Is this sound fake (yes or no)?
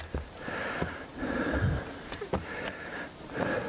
yes